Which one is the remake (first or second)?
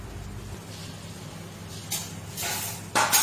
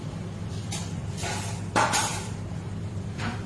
second